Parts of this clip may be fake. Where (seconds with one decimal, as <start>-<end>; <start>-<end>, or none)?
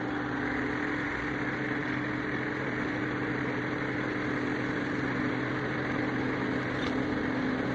1.8-6.0